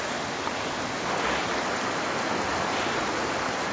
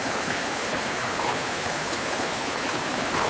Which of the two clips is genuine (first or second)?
first